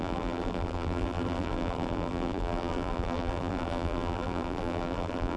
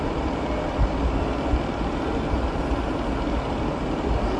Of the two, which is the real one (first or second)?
second